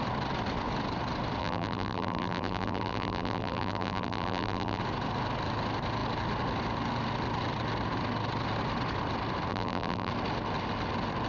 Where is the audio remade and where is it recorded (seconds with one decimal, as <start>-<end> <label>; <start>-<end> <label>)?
0.0-1.4 recorded; 1.4-4.8 remade; 4.8-9.5 recorded; 9.5-10.1 remade; 10.1-11.3 recorded